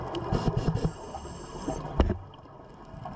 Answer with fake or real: real